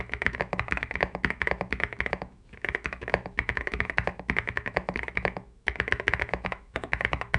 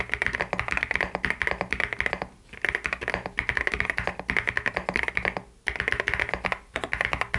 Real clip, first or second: second